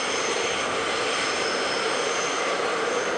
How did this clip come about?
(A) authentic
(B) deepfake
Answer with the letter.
A